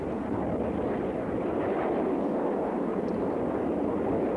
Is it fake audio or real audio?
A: real